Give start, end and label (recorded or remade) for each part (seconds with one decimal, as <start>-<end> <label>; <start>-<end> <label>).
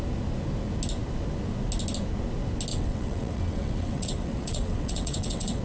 0.0-2.7 recorded; 2.7-5.6 remade